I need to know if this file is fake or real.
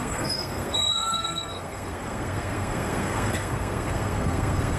fake